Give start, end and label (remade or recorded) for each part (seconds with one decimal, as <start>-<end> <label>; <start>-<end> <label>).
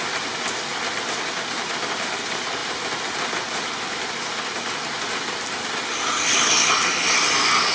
0.0-7.7 recorded